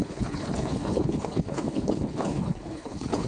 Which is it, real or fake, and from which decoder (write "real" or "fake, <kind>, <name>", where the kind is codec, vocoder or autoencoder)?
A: fake, codec, HILCodec